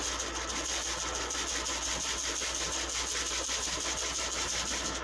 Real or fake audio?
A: real